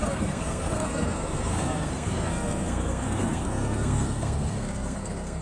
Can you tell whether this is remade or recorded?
remade